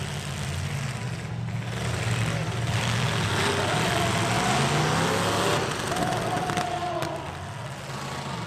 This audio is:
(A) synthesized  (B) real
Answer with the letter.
B